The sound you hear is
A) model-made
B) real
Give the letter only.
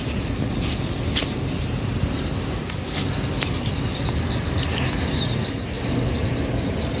B